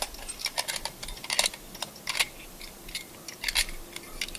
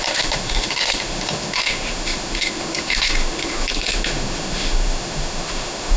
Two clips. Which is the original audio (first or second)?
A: first